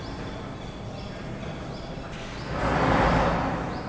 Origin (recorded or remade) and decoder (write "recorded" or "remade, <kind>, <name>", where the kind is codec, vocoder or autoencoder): recorded